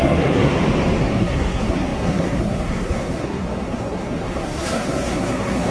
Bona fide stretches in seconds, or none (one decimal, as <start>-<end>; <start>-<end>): 0.5-1.0